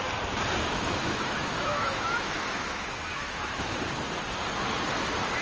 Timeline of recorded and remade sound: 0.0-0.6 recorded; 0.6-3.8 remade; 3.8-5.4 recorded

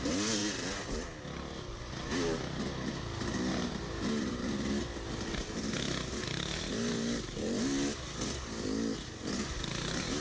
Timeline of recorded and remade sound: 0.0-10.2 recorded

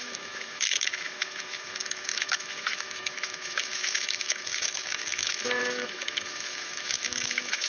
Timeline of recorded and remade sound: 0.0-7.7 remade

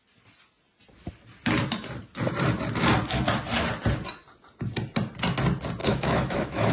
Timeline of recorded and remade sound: 0.0-5.8 recorded; 5.8-6.7 remade

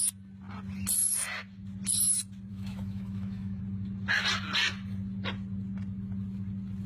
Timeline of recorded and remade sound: 0.0-2.5 recorded; 2.5-3.6 remade; 3.6-6.9 recorded